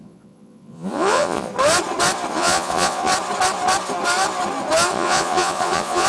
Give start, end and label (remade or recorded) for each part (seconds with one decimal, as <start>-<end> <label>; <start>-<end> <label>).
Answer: 0.0-1.5 remade; 1.5-2.3 recorded; 2.3-3.1 remade; 3.1-4.9 recorded; 4.9-6.1 remade